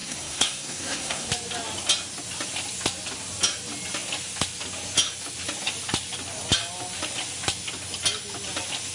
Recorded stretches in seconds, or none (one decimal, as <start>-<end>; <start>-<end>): 1.3-8.9